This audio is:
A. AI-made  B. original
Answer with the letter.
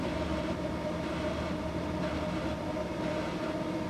A